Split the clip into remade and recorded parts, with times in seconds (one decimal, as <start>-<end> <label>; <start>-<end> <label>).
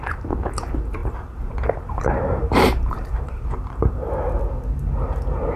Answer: 0.0-1.0 recorded; 1.0-4.4 remade; 4.4-5.6 recorded